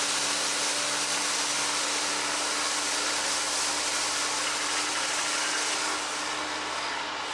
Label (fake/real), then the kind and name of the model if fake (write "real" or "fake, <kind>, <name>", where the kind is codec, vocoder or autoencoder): real